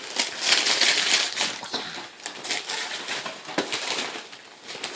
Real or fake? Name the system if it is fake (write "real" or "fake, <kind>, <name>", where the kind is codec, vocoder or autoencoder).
real